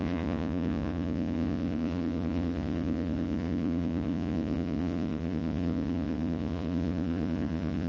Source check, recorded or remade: remade